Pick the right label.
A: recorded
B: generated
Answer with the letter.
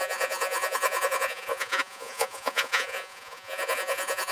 B